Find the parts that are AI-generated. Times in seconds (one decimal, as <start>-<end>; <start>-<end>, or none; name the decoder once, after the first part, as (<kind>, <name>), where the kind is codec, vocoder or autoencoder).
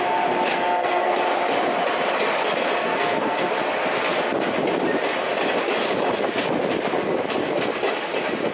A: 0.5-1.2 (codec, SNAC); 2.8-3.5